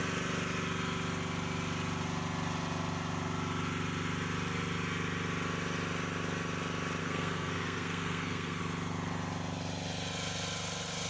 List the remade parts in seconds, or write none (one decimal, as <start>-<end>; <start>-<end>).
7.0-8.6

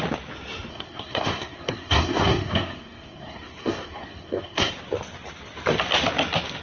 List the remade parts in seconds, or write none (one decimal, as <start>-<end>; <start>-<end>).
0.7-4.7